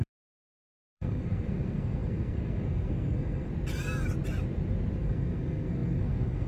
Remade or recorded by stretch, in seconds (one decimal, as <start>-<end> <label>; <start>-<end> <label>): 0.0-3.5 remade; 3.5-5.0 recorded; 5.0-6.5 remade